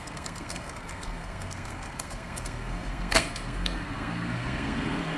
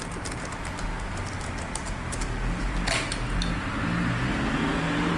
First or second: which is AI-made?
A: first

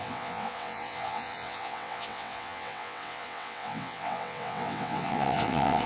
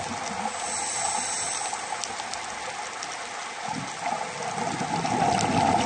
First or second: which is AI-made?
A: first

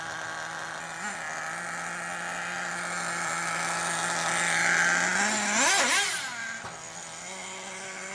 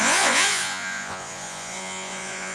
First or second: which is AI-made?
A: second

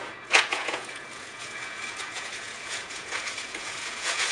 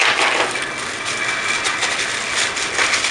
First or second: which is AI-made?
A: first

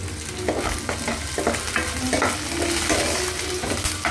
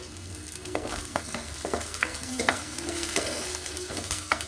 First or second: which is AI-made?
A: second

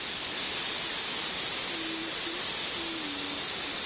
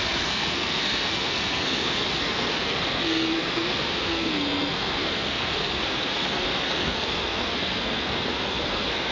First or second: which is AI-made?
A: second